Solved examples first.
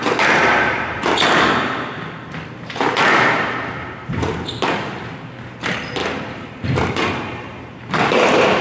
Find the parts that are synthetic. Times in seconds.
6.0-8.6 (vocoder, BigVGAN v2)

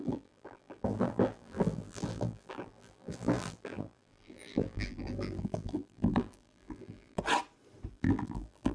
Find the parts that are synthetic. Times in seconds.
0.0-7.2 (vocoder, BigVGAN v2); 7.9-8.7

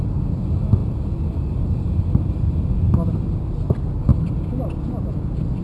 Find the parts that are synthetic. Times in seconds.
0.8-3.1 (vocoder, BigVGAN v2); 4.1-4.6

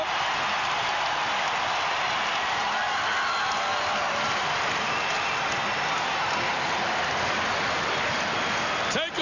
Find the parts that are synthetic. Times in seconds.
4.4-6.9 (vocoder, BigVGAN v2)

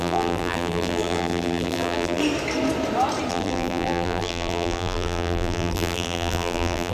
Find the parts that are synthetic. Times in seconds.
0.0-2.2 (vocoder, BigVGAN v2); 3.3-6.9